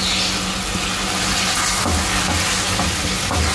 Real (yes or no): yes